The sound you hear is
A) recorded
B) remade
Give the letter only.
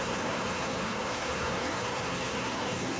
B